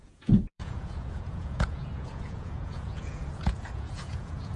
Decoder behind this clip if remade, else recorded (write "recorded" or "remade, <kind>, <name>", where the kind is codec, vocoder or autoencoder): remade, vocoder, Vocos